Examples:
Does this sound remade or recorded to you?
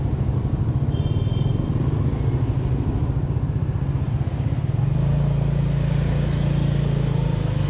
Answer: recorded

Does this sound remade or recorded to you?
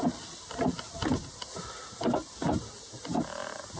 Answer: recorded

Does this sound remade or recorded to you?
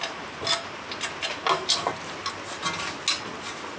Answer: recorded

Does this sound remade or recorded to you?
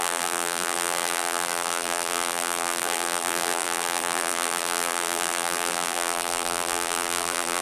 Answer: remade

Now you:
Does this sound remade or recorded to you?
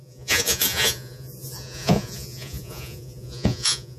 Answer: remade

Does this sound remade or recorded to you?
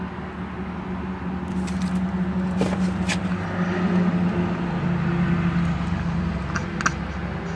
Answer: recorded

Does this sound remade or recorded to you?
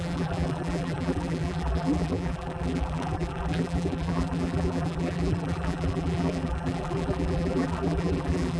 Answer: remade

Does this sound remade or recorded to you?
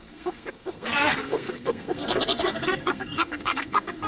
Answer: remade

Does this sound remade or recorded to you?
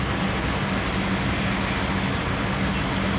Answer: recorded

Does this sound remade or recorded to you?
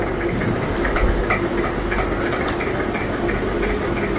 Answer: recorded